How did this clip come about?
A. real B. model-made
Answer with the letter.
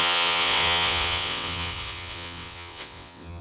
B